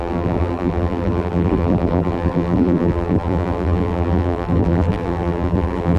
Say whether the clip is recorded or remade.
remade